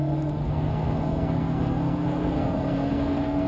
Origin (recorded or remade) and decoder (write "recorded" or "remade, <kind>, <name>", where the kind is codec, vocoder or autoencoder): remade, codec, SNAC